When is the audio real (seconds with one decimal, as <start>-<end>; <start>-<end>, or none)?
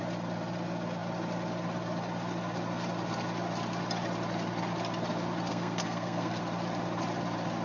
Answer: 0.0-5.5; 6.4-7.6